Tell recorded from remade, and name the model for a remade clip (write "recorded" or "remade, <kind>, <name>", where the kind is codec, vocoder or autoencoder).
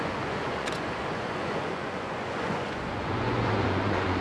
remade, vocoder, Vocos